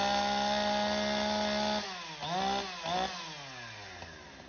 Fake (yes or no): no